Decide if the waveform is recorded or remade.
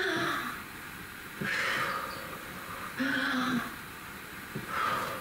recorded